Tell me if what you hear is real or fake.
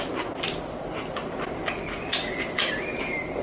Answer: real